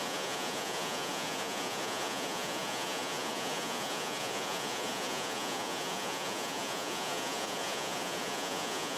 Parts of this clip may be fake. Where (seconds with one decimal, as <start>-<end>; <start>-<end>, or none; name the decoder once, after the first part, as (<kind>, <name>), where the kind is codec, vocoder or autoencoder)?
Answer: 0.0-9.0 (vocoder, Vocos)